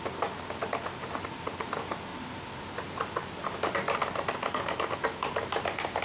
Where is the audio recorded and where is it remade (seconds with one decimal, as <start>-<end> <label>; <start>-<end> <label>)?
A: 0.0-6.0 recorded